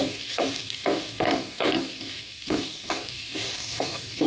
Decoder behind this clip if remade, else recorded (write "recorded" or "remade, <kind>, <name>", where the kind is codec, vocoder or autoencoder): remade, codec, DAC